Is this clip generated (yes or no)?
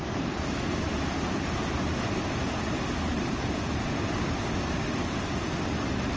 no